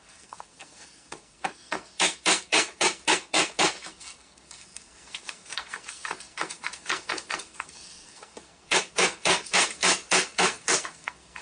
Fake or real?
fake